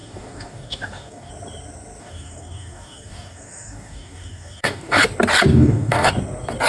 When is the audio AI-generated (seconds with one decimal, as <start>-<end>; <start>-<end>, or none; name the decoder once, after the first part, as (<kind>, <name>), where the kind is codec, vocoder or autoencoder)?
0.0-1.3 (codec, DAC); 2.0-5.0; 5.5-6.1

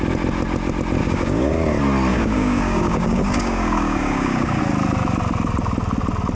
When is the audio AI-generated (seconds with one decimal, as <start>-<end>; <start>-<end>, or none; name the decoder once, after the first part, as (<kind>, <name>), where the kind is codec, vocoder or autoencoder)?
1.0-1.5 (codec, DAC); 2.1-4.6